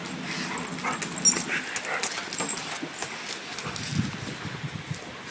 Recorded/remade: recorded